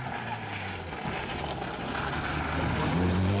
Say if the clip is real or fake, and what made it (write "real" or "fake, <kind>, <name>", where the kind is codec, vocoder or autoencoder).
real